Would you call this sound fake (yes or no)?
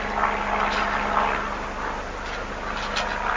no